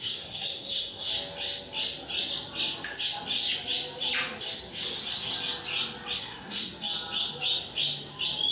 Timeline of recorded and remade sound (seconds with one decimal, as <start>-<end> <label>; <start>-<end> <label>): 0.0-1.1 remade; 1.1-6.2 recorded; 6.2-6.7 remade; 6.7-8.5 recorded